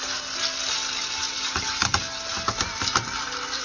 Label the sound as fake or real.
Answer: real